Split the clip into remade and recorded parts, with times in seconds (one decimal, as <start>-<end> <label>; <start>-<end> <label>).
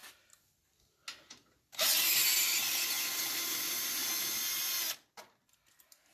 0.0-6.1 recorded